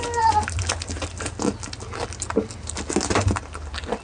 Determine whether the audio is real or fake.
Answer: real